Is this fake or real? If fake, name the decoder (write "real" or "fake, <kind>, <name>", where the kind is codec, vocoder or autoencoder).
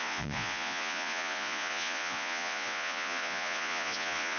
fake, vocoder, Vocos